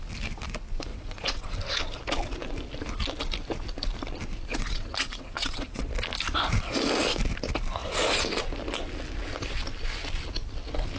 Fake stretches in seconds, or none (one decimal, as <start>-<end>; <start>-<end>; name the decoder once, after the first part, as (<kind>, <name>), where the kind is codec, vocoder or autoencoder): 0.9-1.5 (vocoder, WaveNeXt); 4.5-5.9